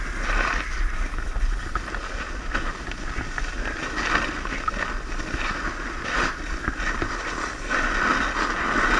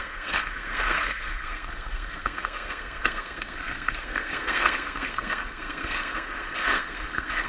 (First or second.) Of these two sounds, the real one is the first